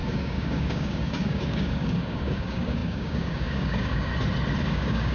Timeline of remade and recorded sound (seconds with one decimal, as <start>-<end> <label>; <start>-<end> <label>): 0.0-4.1 remade; 4.1-4.6 recorded; 4.6-5.1 remade